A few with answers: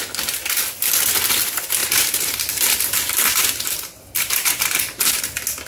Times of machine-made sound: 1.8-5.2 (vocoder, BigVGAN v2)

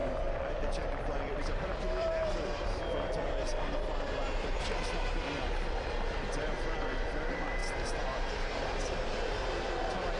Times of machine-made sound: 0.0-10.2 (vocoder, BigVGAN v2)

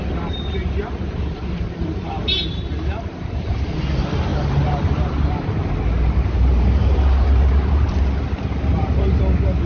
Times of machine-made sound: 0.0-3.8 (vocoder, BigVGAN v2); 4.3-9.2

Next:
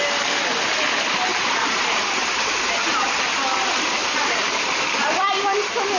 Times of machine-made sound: 1.3-2.6 (vocoder, BigVGAN v2); 4.0-4.6